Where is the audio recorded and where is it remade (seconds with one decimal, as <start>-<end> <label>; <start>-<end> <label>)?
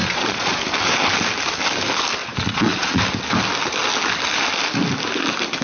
0.0-0.6 remade; 0.6-2.2 recorded; 2.2-3.0 remade; 3.0-5.6 recorded